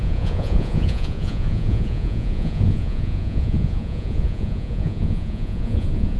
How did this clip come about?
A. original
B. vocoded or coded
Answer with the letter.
B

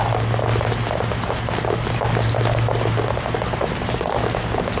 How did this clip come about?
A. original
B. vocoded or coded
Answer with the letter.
A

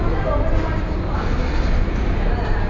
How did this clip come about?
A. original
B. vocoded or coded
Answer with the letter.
A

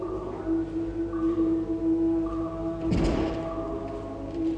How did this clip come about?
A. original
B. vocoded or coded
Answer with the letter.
A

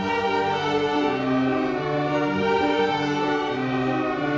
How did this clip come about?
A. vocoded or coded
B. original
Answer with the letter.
B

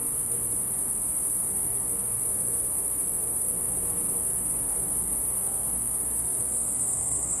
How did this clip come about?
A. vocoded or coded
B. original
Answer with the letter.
A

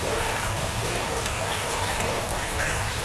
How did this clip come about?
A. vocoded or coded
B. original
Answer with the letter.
A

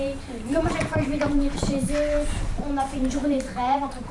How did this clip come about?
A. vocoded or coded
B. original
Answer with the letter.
A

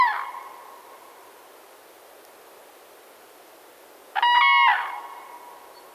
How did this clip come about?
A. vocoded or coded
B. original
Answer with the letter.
B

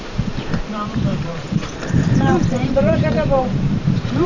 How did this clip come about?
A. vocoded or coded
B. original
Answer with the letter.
A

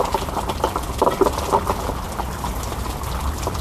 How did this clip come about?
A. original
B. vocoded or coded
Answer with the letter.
A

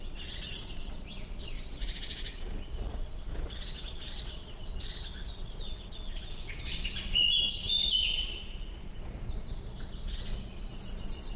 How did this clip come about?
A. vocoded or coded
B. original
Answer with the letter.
A